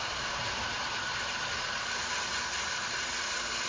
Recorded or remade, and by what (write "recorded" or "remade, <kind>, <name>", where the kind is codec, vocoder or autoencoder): recorded